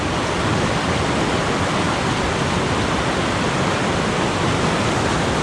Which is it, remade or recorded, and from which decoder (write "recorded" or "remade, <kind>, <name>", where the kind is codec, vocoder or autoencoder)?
recorded